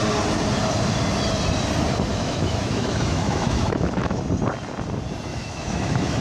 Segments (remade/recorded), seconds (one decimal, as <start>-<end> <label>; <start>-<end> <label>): 0.0-2.1 recorded; 2.1-4.2 remade; 4.2-5.3 recorded; 5.3-6.2 remade